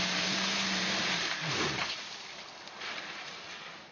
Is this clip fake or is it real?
real